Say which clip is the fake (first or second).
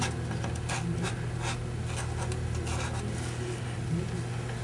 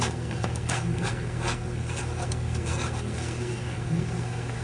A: second